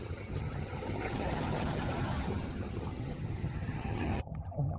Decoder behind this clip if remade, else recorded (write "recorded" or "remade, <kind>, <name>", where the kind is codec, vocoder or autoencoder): remade, vocoder, HiFi-GAN